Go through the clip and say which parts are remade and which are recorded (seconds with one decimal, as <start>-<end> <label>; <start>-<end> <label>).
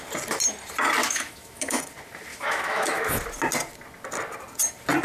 0.0-1.0 recorded; 1.0-1.8 remade; 1.8-2.3 recorded; 2.3-3.2 remade; 3.2-5.0 recorded